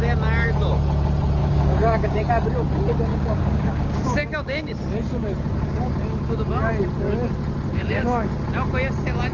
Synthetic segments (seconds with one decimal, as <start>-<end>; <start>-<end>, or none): 1.4-2.3; 3.1-4.8; 7.7-8.3